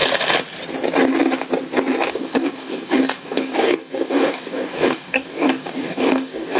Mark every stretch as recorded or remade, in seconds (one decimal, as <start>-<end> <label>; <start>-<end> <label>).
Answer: 0.0-2.1 recorded; 2.1-6.6 remade

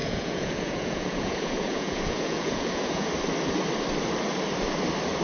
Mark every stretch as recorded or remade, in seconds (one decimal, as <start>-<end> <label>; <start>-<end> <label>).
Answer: 0.0-3.1 remade; 3.1-5.2 recorded